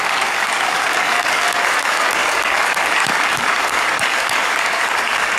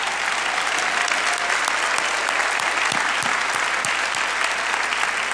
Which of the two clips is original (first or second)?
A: second